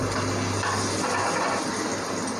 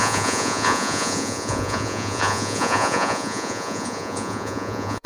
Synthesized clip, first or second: second